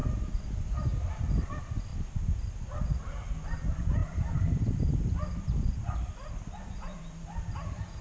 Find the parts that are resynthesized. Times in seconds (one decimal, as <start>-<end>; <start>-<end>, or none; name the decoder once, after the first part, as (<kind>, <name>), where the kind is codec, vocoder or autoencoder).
0.0-0.5 (vocoder, BigVGAN v2); 1.9-2.5; 4.0-7.0